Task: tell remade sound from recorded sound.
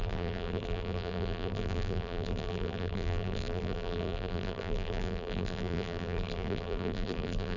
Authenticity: remade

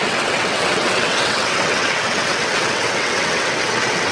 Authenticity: remade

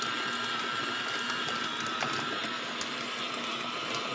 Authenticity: recorded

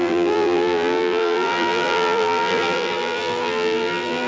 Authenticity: remade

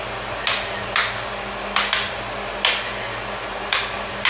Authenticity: recorded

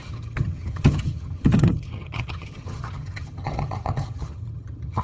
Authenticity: remade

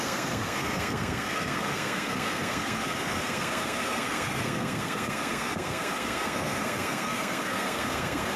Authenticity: remade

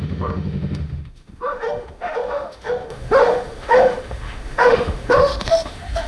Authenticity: remade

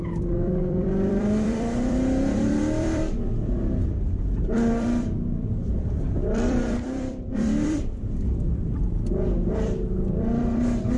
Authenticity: remade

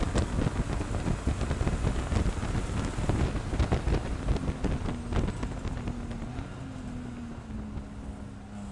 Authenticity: recorded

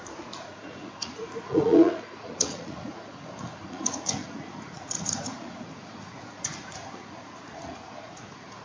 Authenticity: remade